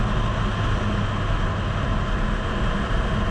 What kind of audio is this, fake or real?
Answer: real